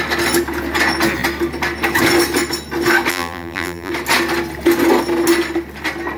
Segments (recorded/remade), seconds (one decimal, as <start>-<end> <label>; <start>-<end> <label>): 0.0-3.1 recorded; 3.1-3.9 remade; 3.9-6.2 recorded